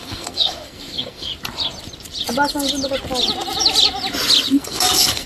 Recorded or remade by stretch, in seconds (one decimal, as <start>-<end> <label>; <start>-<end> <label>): 0.0-1.3 remade; 1.3-4.5 recorded; 4.5-5.3 remade